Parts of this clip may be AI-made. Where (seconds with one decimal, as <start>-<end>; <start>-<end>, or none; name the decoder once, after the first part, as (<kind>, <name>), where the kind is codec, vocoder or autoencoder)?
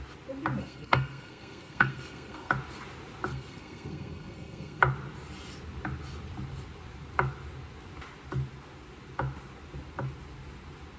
0.6-2.5 (codec, SNAC); 3.3-4.8